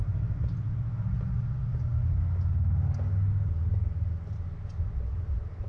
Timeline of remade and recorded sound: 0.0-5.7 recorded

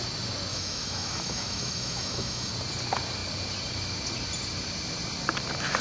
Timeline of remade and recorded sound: 0.0-0.5 recorded; 0.5-2.5 remade; 2.5-5.8 recorded

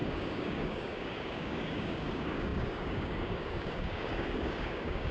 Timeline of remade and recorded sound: 0.0-5.1 remade

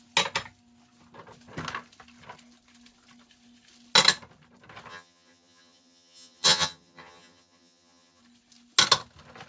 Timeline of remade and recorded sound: 0.0-4.9 recorded; 4.9-8.2 remade; 8.2-9.5 recorded

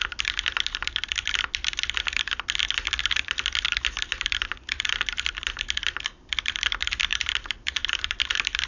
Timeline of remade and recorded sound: 0.0-7.1 recorded; 7.1-8.2 remade; 8.2-8.7 recorded